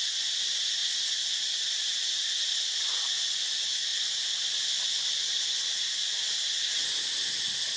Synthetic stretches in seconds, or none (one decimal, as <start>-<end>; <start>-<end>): none

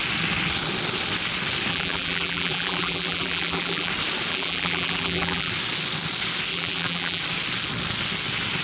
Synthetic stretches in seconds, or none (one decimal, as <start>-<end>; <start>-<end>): 1.7-3.9; 4.3-5.5; 6.5-7.2

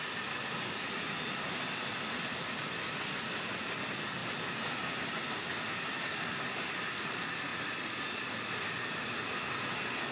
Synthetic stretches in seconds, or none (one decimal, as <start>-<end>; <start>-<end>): none

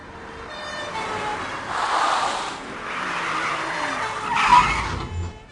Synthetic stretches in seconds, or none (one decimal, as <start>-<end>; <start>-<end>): 0.0-3.3

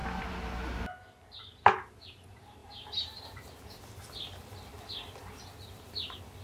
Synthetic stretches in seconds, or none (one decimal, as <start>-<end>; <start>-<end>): none

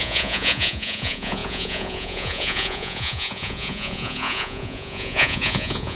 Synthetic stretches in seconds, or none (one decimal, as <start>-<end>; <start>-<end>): 0.0-6.0

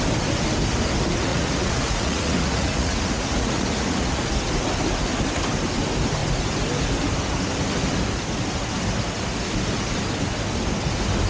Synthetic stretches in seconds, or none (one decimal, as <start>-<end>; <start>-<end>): 1.3-4.3